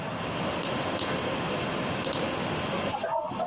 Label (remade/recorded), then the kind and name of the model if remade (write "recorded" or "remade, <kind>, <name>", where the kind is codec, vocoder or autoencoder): recorded